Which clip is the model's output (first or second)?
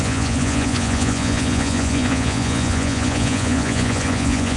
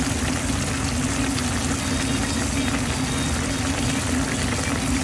first